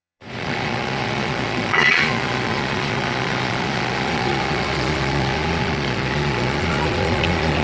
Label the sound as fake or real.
fake